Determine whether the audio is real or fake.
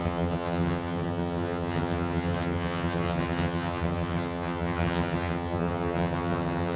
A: fake